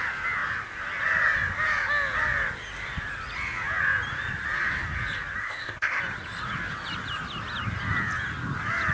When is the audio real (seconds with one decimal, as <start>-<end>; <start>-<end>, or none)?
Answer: 0.0-5.4; 6.0-8.9